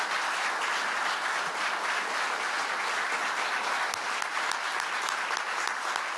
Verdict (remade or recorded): recorded